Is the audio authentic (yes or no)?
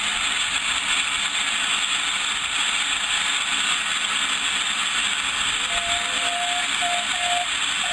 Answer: yes